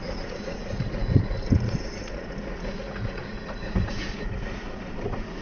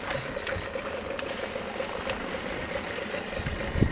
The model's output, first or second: first